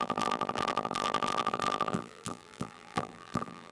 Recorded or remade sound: remade